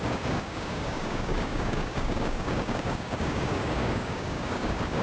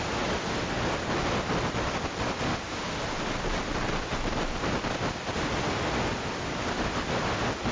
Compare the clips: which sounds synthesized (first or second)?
first